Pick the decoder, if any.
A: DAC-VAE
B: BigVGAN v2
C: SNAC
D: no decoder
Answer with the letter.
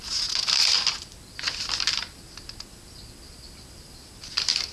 D